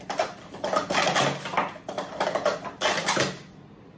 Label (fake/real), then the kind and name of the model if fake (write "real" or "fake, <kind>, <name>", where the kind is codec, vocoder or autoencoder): real